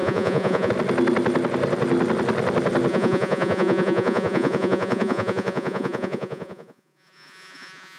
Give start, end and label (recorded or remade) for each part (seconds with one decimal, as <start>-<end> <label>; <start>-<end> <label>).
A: 0.0-0.7 remade; 0.7-2.9 recorded; 2.9-8.0 remade